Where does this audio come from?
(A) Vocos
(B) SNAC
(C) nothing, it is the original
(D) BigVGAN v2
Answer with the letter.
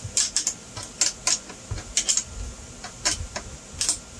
C